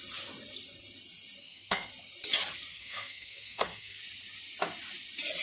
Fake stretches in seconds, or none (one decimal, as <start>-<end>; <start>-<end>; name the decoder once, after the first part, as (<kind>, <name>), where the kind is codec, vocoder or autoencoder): 1.4-1.9 (codec, SNAC); 2.7-4.0